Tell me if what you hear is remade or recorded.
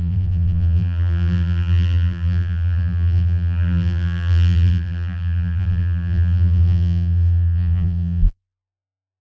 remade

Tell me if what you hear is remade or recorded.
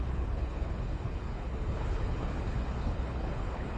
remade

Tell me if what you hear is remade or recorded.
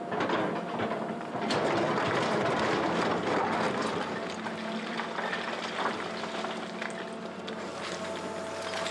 recorded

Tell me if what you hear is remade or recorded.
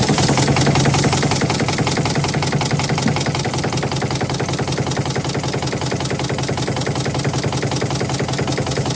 recorded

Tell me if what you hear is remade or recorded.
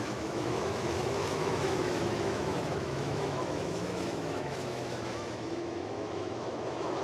remade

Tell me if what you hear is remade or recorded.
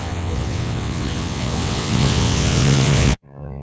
remade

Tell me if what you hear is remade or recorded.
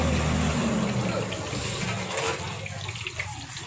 recorded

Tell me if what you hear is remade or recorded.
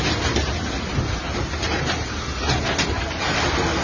recorded